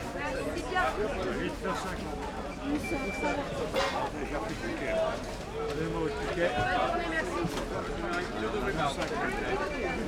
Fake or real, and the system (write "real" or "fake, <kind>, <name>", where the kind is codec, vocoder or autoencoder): real